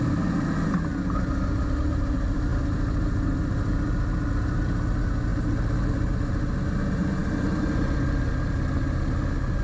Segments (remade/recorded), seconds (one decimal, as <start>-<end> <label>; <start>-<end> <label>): 0.0-9.6 recorded